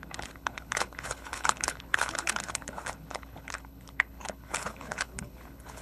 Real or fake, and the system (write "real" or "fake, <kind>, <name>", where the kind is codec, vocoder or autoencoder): fake, codec, HILCodec